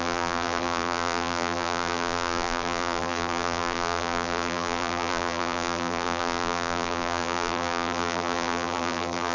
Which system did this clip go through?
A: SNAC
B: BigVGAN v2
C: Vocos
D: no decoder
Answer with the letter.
B